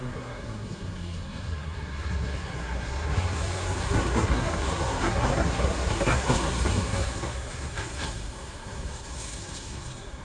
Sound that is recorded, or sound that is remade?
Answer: remade